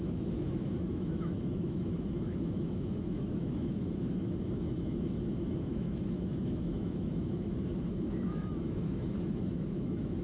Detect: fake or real fake